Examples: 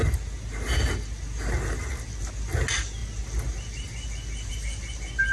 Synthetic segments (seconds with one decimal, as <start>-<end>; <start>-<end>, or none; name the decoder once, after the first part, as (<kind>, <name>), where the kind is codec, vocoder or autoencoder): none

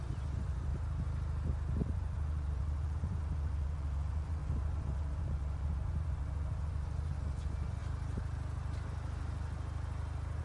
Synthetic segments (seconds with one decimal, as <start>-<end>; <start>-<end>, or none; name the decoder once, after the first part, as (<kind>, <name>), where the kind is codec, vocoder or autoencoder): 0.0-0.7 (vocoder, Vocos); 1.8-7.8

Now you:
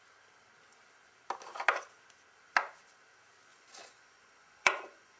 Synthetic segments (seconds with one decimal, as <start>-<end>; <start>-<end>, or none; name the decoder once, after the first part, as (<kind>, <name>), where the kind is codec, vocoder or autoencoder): 3.5-5.2 (vocoder, Vocos)

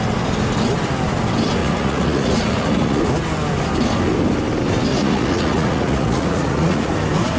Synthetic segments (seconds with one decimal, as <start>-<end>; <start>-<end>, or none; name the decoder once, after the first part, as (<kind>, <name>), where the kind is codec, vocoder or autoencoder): 1.6-3.0 (vocoder, Vocos); 4.9-6.9

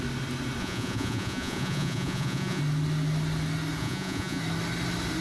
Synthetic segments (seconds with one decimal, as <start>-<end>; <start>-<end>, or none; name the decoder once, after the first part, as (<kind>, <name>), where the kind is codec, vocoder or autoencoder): 0.6-2.6 (vocoder, Vocos); 3.8-4.4

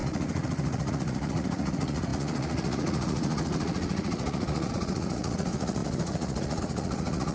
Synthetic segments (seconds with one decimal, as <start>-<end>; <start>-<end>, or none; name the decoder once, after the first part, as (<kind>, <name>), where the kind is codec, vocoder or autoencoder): 0.0-7.3 (vocoder, Vocos)

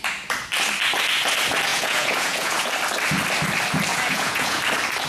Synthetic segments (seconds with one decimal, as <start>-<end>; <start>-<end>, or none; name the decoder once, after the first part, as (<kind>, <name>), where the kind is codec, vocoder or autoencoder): 1.7-2.7 (vocoder, Vocos); 3.9-4.6

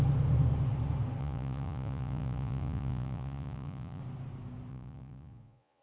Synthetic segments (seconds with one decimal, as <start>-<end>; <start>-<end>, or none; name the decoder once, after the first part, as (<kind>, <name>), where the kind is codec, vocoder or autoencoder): 1.2-4.0 (vocoder, Vocos); 4.7-5.8